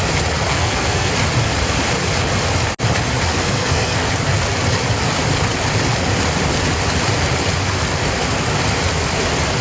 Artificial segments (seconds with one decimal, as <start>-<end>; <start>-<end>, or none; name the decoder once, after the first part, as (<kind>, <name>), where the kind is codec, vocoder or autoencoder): 0.5-1.1 (codec, SNAC); 3.3-4.1

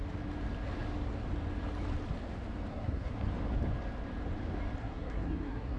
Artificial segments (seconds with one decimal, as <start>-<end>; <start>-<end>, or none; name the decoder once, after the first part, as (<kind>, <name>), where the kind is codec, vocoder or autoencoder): 2.7-3.3 (codec, SNAC); 4.8-5.8

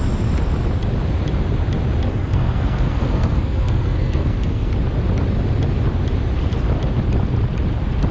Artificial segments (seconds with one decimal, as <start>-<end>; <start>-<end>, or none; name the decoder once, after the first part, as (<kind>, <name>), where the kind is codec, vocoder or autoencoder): 2.1-4.7 (codec, SNAC)

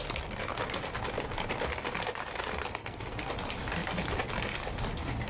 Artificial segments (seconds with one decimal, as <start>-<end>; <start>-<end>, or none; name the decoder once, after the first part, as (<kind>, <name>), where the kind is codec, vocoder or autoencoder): 2.8-3.3 (codec, SNAC)

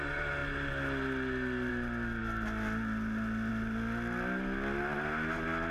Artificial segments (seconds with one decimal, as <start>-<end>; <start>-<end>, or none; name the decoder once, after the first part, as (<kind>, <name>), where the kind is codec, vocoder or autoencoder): none